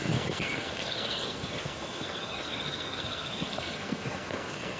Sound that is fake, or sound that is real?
fake